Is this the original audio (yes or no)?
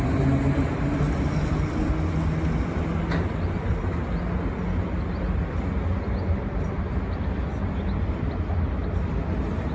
yes